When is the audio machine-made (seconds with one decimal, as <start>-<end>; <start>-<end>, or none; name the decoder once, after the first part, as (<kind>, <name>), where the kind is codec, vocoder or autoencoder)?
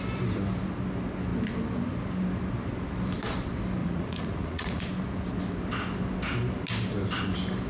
3.8-4.8 (vocoder, Vocos)